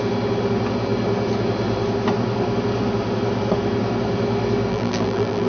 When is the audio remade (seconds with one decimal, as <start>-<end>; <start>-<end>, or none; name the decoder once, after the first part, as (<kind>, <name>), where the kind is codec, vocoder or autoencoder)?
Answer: 4.7-5.5 (vocoder, BigVGAN v2)